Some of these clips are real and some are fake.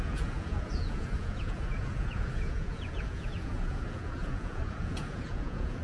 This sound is fake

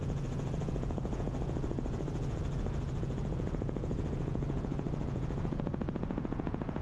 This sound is fake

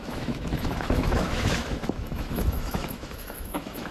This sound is fake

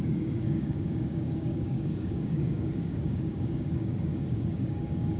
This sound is fake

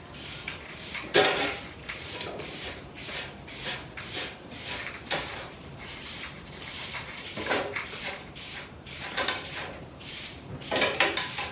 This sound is fake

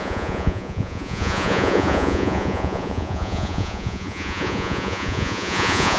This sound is fake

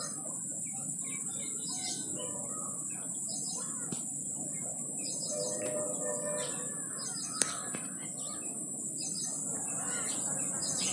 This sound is real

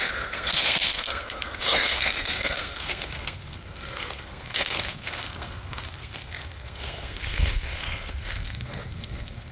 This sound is fake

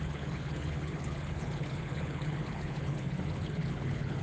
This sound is fake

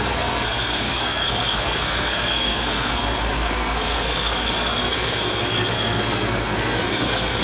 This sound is fake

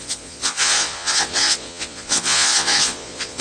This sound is fake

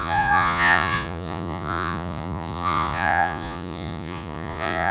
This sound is fake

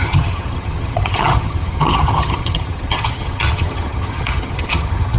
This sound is fake